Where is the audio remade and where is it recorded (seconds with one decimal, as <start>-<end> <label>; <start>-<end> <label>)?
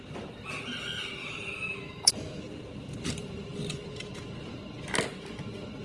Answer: 0.0-1.2 recorded; 1.2-2.4 remade; 2.4-5.8 recorded